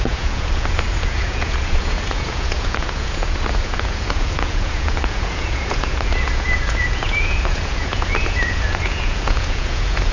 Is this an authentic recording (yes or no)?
no